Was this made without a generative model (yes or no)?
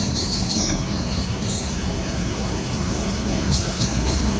no